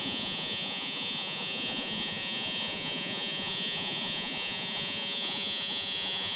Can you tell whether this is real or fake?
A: fake